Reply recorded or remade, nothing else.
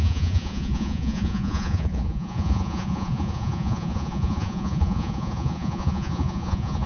remade